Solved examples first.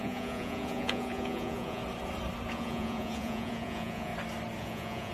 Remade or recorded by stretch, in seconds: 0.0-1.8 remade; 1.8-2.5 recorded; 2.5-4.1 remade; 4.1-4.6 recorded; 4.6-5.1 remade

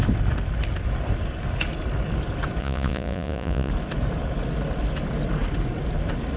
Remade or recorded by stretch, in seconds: 0.0-2.6 recorded; 2.6-3.7 remade; 3.7-6.4 recorded

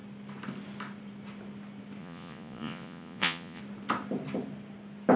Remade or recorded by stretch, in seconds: 0.0-2.0 recorded; 2.0-3.6 remade; 3.6-5.2 recorded

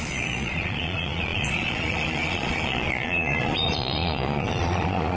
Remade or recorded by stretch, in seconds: 0.0-5.2 remade

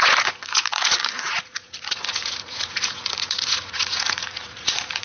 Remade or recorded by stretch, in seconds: 0.0-5.0 remade

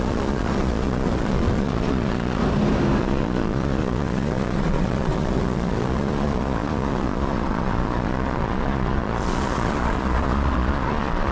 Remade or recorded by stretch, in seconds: 0.0-2.4 remade; 2.4-3.0 recorded; 3.0-11.3 remade

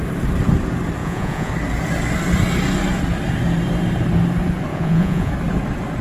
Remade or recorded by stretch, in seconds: 0.0-1.0 recorded; 1.0-1.5 remade; 1.5-4.7 recorded; 4.7-5.3 remade; 5.3-6.0 recorded